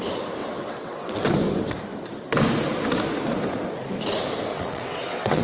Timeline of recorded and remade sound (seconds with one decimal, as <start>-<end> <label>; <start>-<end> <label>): 0.0-0.4 recorded; 0.4-1.3 remade; 1.3-4.5 recorded; 4.5-5.4 remade